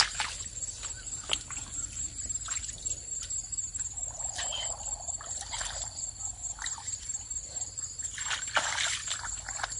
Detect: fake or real real